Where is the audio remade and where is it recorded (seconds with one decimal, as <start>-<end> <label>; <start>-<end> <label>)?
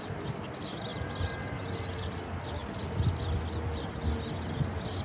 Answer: 0.0-5.0 recorded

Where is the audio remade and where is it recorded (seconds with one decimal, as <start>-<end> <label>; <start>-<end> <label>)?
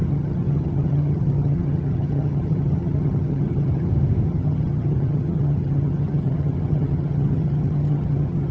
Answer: 0.0-3.9 remade; 3.9-4.3 recorded; 4.3-8.5 remade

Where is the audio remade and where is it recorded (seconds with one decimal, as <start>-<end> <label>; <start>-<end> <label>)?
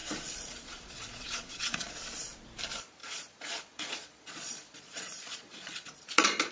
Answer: 0.0-1.9 remade; 1.9-3.0 recorded; 3.0-6.5 remade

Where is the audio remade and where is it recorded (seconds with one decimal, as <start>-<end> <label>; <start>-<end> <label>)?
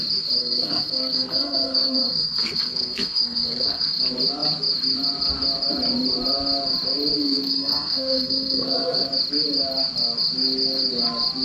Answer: 0.0-0.4 recorded; 0.4-4.0 remade; 4.0-7.2 recorded; 7.2-9.1 remade; 9.1-11.4 recorded